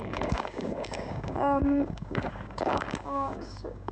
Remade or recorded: remade